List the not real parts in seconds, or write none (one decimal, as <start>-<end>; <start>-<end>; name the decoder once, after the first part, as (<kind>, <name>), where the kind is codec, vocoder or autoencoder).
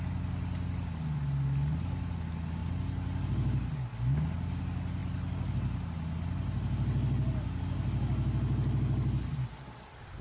none